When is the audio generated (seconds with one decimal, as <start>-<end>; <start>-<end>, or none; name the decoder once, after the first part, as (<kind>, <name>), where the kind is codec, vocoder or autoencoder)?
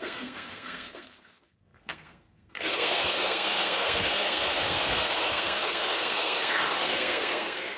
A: 0.0-7.8 (codec, SNAC)